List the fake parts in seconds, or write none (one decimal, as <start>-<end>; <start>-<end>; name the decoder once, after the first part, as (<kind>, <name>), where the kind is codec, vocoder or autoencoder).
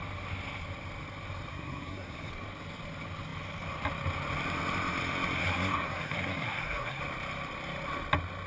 1.5-2.3 (codec, SNAC); 5.4-7.0